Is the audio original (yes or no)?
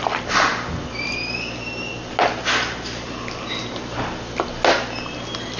yes